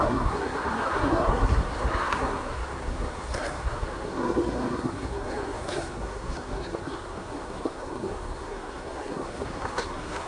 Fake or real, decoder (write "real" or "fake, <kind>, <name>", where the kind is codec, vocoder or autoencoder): fake, codec, SNAC